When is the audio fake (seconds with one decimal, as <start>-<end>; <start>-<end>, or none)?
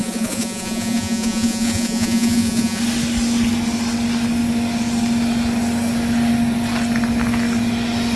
0.0-2.8